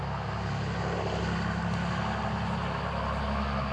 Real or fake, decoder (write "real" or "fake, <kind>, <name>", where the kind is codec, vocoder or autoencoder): real